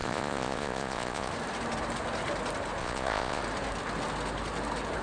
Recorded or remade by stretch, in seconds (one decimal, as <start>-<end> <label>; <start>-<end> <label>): 0.0-1.3 remade; 1.3-2.8 recorded; 2.8-3.4 remade; 3.4-5.0 recorded